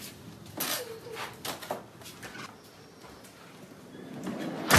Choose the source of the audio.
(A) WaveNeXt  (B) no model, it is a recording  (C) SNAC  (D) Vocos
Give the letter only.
B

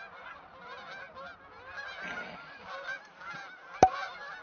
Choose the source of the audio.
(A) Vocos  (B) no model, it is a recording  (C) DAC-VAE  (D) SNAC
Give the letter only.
B